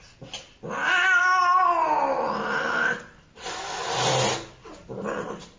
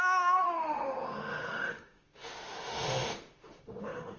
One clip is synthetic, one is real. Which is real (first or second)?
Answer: first